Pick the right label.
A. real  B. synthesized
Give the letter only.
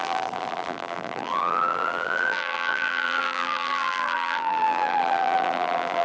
B